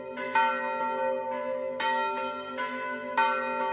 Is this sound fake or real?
real